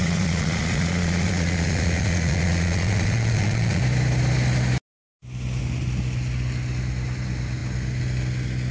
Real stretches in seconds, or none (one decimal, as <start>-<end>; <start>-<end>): 3.8-8.7